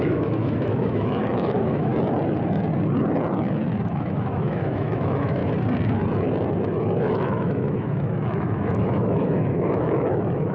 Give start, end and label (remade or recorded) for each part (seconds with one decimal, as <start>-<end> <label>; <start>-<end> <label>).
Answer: 0.0-1.9 remade; 1.9-3.8 recorded; 3.8-5.4 remade; 5.4-7.0 recorded; 7.0-10.5 remade